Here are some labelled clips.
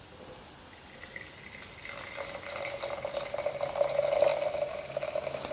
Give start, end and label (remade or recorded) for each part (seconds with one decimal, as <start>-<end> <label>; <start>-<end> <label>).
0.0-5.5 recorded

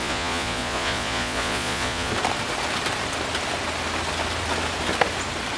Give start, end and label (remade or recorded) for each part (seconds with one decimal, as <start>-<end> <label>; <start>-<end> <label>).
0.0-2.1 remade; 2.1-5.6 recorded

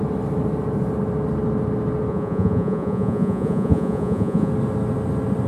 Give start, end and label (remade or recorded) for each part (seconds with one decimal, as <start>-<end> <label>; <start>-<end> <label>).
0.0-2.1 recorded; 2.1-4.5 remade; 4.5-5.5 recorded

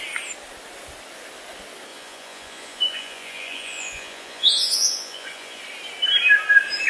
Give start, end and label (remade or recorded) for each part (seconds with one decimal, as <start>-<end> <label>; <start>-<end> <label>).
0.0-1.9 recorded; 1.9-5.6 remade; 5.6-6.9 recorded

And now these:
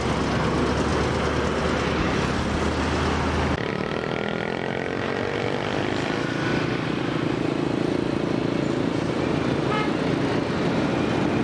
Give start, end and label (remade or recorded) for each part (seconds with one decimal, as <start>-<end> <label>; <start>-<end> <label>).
0.0-11.4 recorded